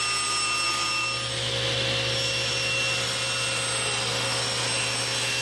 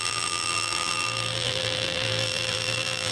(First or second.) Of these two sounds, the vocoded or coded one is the second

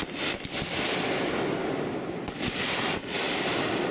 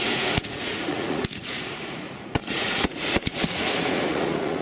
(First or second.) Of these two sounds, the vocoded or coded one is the second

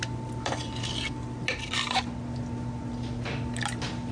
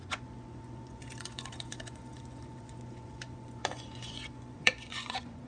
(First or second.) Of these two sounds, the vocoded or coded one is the second